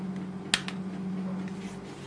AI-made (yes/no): no